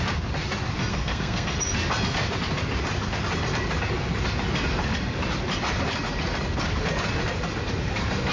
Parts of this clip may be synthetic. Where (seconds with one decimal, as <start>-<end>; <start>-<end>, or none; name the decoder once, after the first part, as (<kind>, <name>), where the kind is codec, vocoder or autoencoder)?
0.9-1.6 (codec, SNAC)